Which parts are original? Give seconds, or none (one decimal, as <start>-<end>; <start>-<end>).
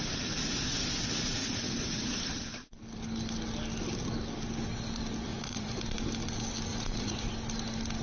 0.0-1.4; 2.2-5.3; 5.8-6.7; 7.3-8.0